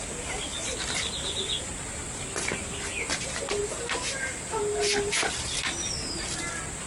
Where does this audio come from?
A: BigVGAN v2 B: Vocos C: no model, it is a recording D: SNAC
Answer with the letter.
C